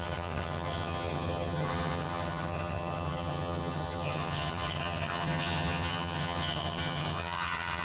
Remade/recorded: remade